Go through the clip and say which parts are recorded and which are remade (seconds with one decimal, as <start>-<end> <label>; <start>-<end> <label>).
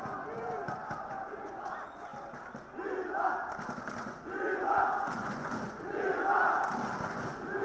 0.0-2.1 remade; 2.1-4.0 recorded; 4.0-6.2 remade; 6.2-7.0 recorded; 7.0-7.6 remade